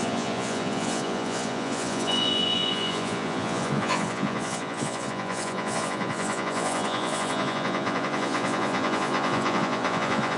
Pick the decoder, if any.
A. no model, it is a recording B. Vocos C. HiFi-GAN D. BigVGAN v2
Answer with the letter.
B